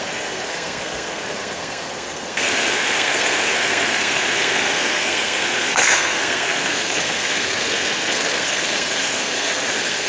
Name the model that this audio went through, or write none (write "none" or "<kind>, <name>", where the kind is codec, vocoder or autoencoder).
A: codec, SNAC